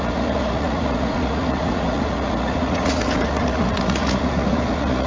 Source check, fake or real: fake